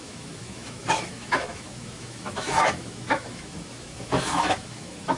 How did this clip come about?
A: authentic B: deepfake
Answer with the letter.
B